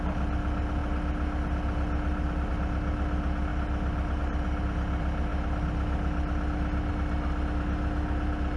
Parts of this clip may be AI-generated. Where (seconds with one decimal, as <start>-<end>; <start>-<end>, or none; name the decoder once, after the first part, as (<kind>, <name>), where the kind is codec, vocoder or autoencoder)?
none